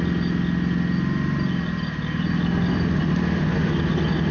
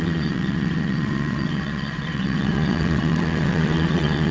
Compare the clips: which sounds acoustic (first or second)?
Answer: first